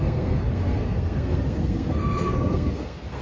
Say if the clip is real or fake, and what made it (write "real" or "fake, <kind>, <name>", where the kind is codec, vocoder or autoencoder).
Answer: fake, codec, SNAC